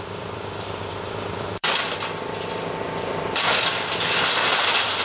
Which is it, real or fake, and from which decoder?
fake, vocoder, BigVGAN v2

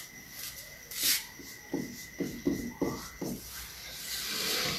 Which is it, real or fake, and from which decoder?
real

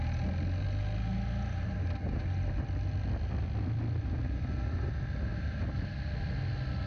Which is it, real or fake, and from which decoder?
real